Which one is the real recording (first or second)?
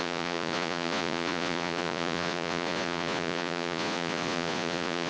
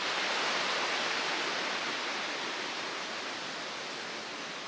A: second